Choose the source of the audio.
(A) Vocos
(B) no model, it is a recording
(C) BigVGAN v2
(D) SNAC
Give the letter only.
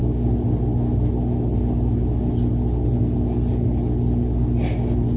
B